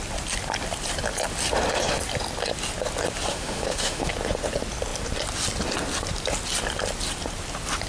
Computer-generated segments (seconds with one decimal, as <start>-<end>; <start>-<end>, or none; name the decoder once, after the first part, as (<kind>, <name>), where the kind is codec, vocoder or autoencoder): 3.3-4.1 (autoencoder, DAC-VAE)